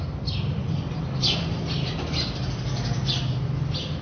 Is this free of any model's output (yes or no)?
yes